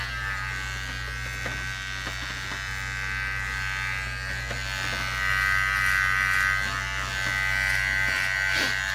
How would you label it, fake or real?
real